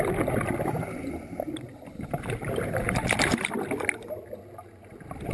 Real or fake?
real